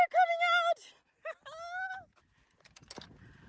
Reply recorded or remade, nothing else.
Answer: recorded